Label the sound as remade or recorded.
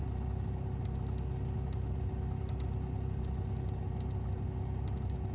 recorded